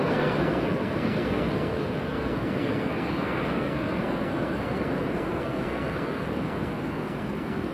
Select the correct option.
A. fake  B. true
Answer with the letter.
A